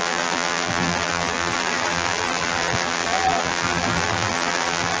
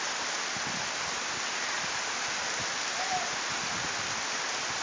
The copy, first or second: first